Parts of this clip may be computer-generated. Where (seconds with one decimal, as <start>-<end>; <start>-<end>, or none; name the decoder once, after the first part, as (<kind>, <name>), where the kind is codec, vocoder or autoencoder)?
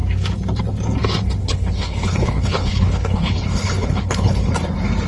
1.4-4.5 (codec, HILCodec)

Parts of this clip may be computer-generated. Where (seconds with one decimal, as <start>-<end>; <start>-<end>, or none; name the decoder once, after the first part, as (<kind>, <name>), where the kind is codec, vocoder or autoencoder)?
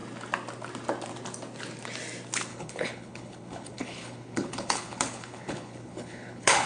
2.5-6.7 (codec, HILCodec)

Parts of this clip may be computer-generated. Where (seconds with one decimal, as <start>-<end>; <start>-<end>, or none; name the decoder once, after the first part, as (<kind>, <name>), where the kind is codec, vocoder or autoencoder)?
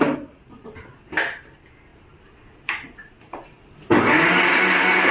none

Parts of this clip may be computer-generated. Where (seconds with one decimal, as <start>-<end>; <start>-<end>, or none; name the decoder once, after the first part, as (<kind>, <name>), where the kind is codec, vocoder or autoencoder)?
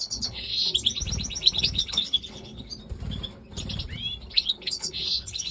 0.0-0.5 (codec, HILCodec); 1.6-2.7; 4.3-5.5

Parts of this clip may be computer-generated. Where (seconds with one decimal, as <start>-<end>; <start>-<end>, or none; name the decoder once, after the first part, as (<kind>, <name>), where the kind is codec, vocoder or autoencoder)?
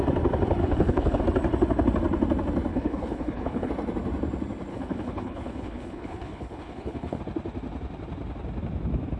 0.6-1.2 (codec, HILCodec); 2.7-3.7; 4.7-7.2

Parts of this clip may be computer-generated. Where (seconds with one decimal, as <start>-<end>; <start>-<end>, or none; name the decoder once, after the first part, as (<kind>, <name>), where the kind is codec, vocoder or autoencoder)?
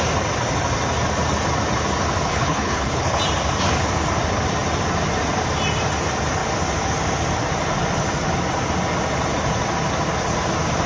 2.3-3.2 (codec, HILCodec)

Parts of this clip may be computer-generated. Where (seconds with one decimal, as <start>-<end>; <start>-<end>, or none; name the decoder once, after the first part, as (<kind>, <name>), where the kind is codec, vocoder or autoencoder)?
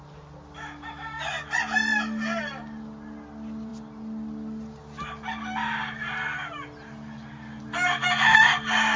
none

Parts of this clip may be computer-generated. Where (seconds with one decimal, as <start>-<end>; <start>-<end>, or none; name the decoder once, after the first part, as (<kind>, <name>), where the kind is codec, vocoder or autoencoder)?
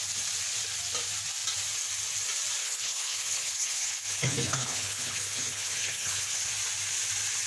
2.6-6.5 (codec, HILCodec)